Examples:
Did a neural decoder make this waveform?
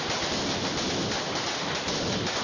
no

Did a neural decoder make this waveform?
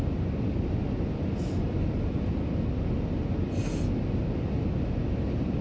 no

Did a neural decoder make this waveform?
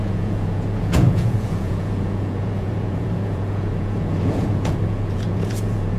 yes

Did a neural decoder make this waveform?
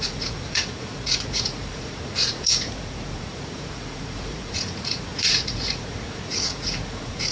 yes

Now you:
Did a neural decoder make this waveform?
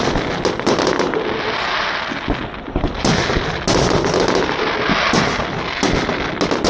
no